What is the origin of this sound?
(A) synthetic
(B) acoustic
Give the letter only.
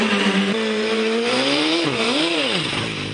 A